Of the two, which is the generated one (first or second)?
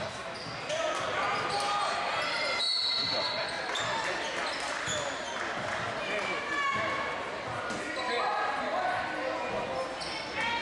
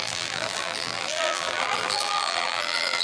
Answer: second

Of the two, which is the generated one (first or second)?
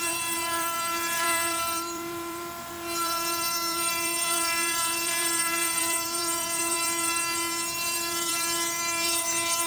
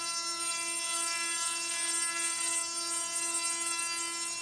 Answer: first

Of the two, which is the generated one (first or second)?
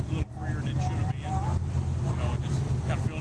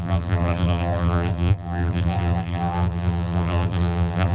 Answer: second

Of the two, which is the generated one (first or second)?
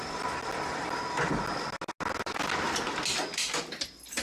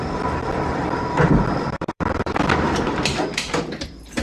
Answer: second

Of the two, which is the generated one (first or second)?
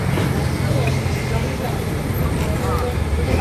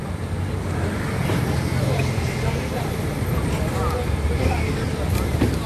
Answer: second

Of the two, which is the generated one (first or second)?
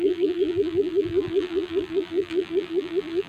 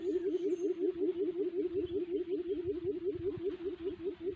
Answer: first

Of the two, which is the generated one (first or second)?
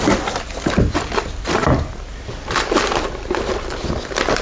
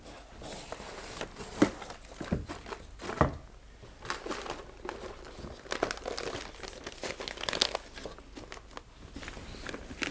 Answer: first